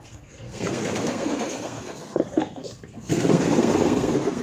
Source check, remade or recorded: remade